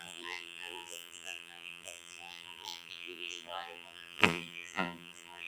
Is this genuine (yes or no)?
no